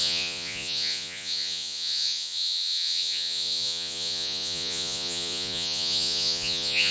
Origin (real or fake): fake